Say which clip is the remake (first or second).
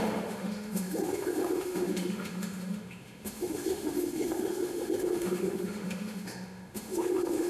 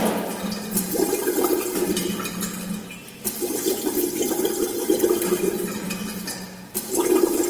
first